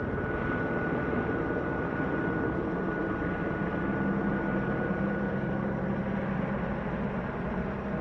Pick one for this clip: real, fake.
real